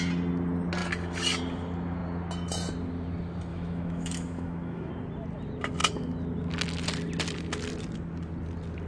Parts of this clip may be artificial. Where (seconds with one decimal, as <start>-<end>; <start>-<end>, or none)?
3.5-4.9